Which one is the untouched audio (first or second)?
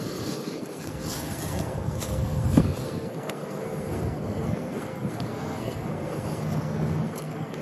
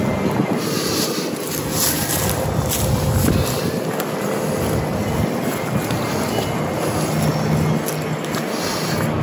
second